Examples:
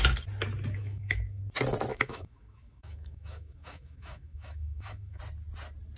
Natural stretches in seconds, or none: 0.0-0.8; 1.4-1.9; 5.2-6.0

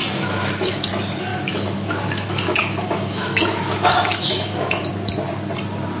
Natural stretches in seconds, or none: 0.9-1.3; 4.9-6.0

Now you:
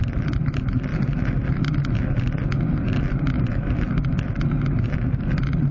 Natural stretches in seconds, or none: 0.0-5.7